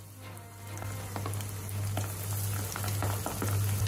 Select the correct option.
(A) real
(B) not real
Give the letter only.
A